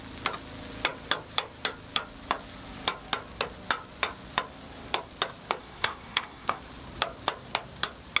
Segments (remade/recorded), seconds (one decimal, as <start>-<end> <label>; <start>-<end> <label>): 0.0-5.6 recorded; 5.6-6.6 remade; 6.6-8.2 recorded